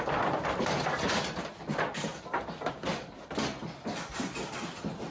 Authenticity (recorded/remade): recorded